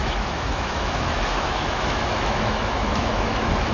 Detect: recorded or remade remade